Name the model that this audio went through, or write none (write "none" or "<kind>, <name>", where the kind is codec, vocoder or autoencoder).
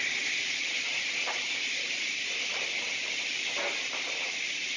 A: none